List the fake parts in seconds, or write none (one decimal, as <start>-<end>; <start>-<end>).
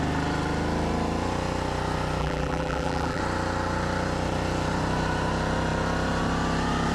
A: 2.2-3.2